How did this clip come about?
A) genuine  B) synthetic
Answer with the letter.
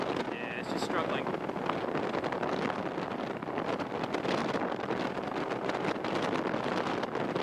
A